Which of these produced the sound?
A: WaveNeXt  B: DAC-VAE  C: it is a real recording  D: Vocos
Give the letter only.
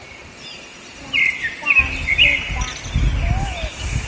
C